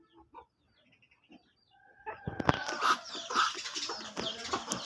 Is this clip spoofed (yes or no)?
no